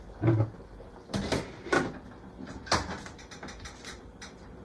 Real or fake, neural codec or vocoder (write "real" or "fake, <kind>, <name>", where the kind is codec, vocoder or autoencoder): real